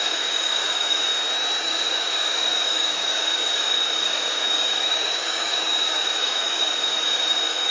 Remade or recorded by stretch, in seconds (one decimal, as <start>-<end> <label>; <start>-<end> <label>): 0.0-1.1 remade; 1.1-1.6 recorded; 1.6-7.7 remade